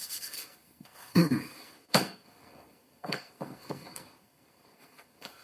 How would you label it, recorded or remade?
remade